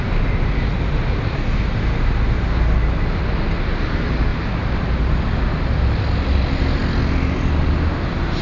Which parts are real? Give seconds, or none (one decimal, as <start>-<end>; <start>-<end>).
0.0-4.3; 5.1-8.4